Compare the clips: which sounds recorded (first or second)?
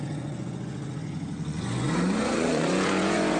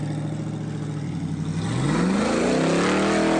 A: second